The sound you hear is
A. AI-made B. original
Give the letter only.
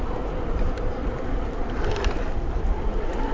B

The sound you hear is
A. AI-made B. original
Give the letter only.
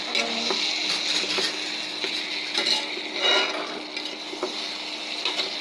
B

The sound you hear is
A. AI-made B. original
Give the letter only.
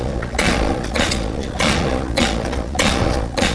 A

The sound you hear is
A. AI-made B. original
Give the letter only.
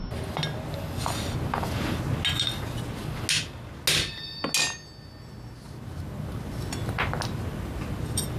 B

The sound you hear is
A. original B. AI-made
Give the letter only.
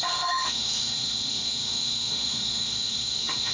B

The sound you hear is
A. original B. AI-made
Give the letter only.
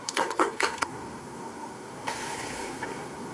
B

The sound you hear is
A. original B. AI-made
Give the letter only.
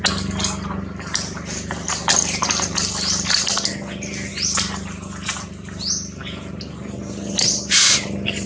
A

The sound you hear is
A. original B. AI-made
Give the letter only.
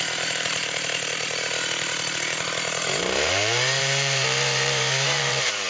B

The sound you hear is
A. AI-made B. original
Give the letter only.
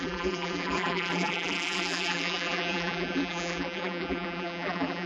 A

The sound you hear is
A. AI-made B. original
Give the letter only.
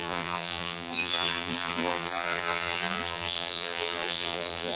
A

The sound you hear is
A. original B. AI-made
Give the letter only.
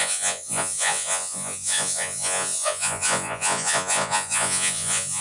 B